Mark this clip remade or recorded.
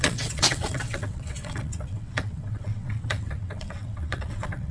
remade